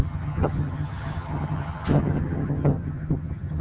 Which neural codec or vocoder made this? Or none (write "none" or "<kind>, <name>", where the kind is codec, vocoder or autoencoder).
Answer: vocoder, HiFi-GAN